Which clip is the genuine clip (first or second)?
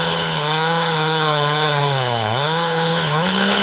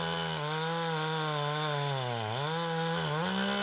second